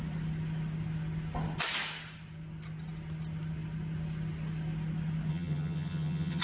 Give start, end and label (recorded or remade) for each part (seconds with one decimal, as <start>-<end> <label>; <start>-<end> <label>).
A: 0.0-5.3 recorded; 5.3-6.4 remade